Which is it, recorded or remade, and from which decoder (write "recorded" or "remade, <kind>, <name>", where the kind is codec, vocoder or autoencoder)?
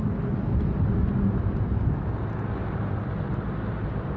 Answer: recorded